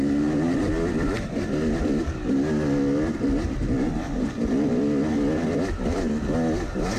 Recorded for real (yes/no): yes